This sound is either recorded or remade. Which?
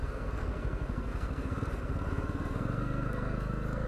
remade